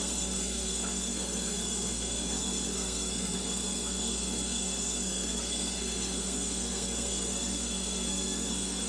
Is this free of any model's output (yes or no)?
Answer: no